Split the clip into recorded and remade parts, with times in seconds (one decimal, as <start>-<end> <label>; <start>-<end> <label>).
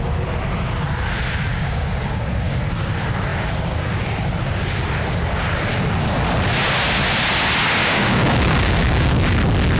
0.0-1.5 recorded; 1.5-2.6 remade; 2.6-7.8 recorded; 7.8-9.1 remade; 9.1-9.8 recorded